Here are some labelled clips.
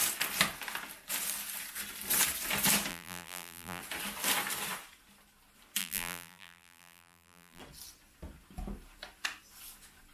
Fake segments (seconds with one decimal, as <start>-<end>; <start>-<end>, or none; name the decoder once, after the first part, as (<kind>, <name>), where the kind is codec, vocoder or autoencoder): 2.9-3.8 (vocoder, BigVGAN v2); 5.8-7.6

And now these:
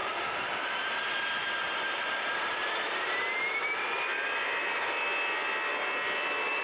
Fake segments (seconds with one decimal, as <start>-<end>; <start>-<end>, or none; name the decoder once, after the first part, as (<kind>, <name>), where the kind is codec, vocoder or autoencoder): none

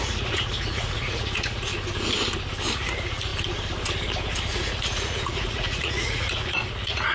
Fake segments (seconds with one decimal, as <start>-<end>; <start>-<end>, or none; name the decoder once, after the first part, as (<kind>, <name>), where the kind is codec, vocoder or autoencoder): 0.0-1.7 (vocoder, Vocos); 2.7-3.3; 4.5-7.1